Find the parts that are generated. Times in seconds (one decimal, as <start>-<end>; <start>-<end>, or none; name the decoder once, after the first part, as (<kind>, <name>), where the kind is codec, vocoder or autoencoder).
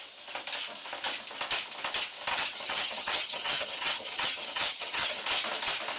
2.3-5.2 (vocoder, HiFi-GAN)